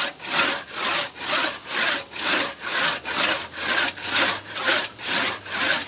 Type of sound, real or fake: real